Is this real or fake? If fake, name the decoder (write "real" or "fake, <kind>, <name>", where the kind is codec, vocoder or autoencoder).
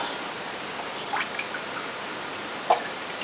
real